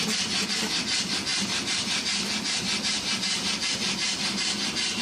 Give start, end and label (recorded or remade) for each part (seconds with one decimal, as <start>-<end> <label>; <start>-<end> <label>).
0.0-5.0 recorded